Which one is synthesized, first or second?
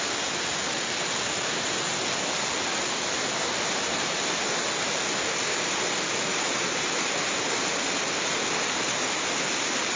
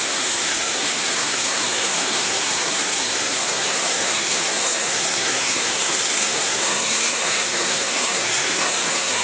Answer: second